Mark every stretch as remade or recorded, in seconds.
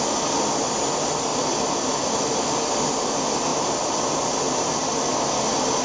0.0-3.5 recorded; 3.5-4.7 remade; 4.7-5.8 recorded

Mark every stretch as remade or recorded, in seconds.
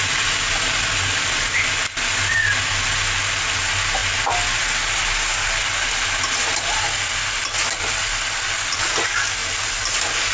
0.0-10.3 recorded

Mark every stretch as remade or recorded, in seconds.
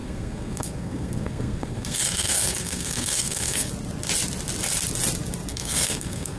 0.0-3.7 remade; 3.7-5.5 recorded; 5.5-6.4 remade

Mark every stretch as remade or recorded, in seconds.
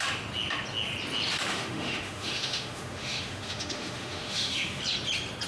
0.0-1.5 recorded; 1.5-4.8 remade; 4.8-5.5 recorded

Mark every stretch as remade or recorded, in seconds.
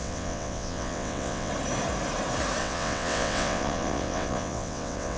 0.0-1.5 remade; 1.5-2.6 recorded; 2.6-5.2 remade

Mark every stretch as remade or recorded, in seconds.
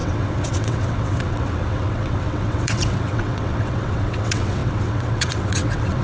0.0-6.0 remade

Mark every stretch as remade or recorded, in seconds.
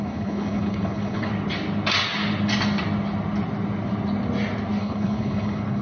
0.0-1.3 remade; 1.3-4.8 recorded; 4.8-5.8 remade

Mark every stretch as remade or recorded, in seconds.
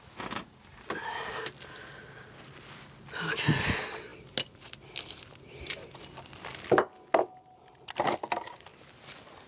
0.0-9.5 recorded